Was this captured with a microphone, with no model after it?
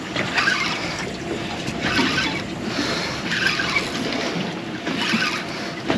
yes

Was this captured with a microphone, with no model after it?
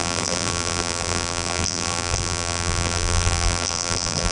no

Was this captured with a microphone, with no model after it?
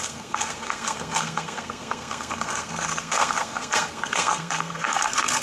no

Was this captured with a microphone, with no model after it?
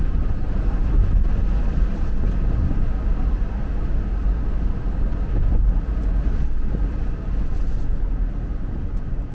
yes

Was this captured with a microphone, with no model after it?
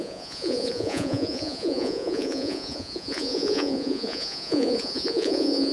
no